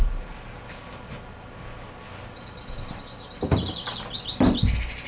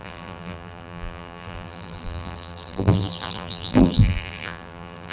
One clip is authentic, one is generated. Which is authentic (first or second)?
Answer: first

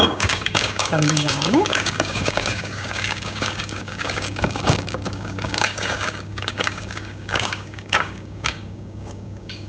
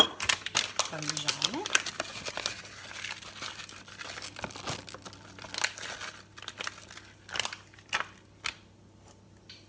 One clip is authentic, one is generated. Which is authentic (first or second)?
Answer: second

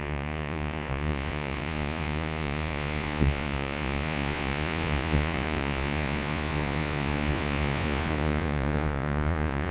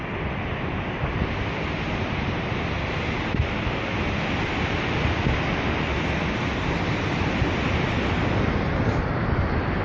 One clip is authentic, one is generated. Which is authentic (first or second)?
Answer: second